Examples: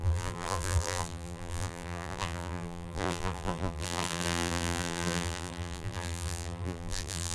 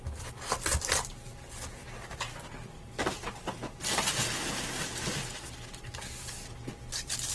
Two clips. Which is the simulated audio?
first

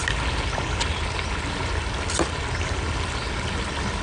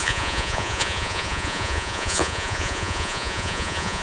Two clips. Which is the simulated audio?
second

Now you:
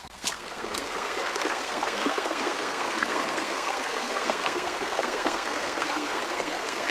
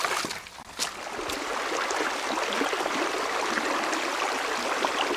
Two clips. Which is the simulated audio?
first